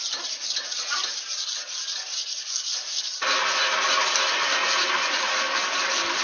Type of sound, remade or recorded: recorded